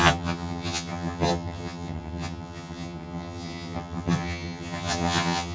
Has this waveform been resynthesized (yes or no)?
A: yes